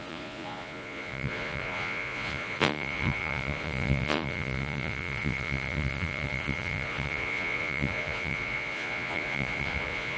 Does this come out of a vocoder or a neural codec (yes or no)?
yes